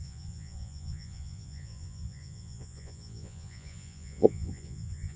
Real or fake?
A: fake